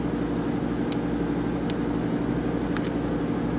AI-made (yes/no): no